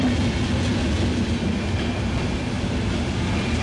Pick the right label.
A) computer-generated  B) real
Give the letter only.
B